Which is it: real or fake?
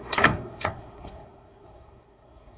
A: fake